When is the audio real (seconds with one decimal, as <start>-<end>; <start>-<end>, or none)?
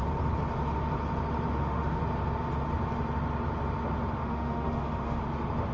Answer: 0.0-1.5; 2.0-4.2; 5.2-5.7